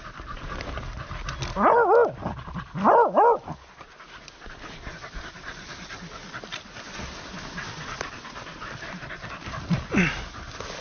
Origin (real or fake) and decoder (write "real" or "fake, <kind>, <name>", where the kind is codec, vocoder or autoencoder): real